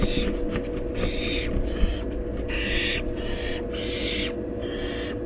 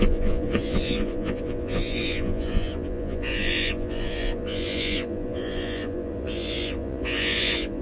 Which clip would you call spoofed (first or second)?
second